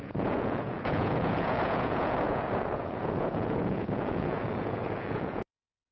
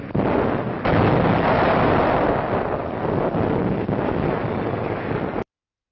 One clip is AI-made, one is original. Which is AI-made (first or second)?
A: first